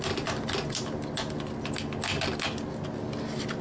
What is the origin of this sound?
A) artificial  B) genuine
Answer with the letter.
B